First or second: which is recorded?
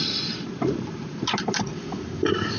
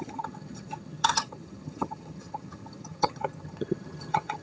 first